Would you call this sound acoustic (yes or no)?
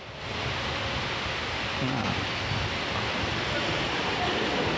yes